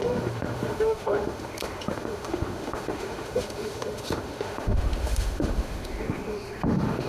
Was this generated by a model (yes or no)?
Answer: yes